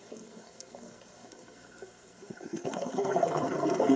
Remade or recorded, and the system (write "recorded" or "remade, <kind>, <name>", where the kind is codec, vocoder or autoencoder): remade, codec, SNAC